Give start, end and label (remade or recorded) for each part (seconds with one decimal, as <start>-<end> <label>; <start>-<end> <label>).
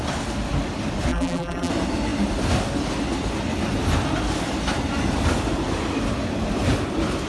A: 0.0-1.1 recorded; 1.1-1.7 remade; 1.7-7.3 recorded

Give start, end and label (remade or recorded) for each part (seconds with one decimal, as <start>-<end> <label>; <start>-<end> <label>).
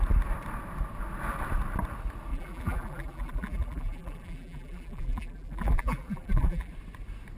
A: 0.0-2.3 recorded; 2.3-6.7 remade; 6.7-7.4 recorded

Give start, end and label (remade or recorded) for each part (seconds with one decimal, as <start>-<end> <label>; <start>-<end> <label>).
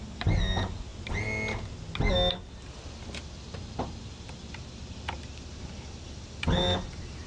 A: 0.0-7.3 recorded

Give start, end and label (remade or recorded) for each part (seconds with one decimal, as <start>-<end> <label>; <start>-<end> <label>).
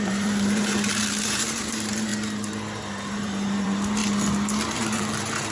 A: 0.0-2.1 remade; 2.1-3.1 recorded; 3.1-4.0 remade; 4.0-4.8 recorded; 4.8-5.5 remade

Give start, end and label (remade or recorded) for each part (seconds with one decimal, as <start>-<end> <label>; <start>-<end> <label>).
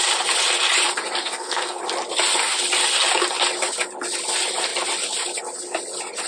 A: 0.0-1.2 recorded; 1.2-1.8 remade; 1.8-6.3 recorded